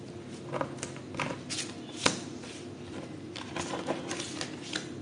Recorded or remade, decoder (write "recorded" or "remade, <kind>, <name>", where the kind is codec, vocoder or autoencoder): recorded